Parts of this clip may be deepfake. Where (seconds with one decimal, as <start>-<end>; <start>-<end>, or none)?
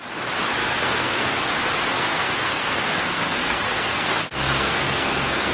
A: 0.6-1.4; 1.9-5.5